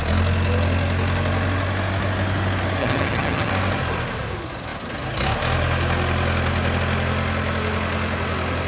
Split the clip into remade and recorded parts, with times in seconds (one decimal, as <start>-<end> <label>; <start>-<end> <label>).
0.0-2.8 recorded; 2.8-3.5 remade; 3.5-8.7 recorded